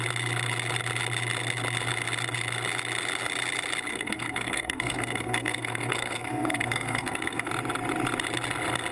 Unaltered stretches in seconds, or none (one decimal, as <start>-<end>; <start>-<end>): 0.0-3.9; 7.5-8.9